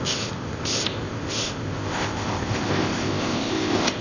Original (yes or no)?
no